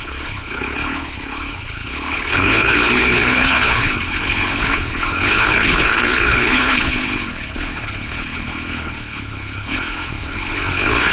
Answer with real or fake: fake